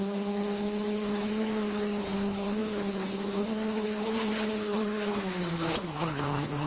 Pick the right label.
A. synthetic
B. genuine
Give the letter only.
A